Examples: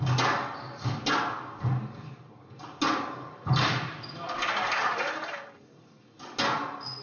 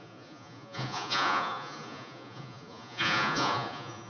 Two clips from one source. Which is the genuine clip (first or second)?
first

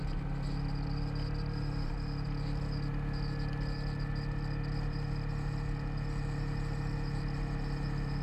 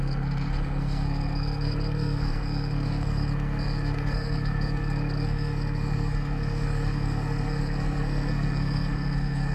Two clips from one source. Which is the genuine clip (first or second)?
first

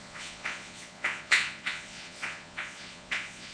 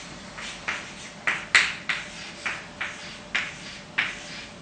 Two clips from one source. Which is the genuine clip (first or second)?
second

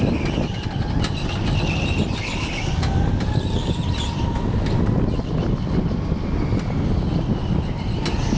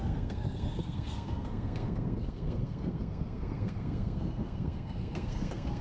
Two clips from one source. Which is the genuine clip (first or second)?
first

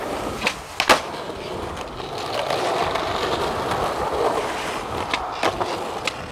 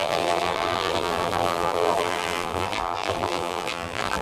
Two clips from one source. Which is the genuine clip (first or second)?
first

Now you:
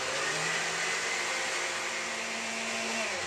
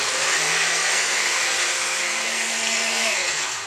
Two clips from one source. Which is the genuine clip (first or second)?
first